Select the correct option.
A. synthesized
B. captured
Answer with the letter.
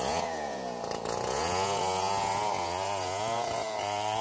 A